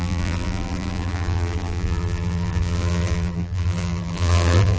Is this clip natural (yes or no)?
no